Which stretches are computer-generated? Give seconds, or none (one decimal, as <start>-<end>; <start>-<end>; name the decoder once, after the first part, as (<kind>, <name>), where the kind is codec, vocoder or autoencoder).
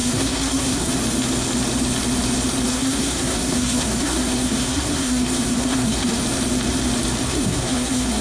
0.0-0.9 (codec, SNAC); 2.7-6.2; 7.3-8.2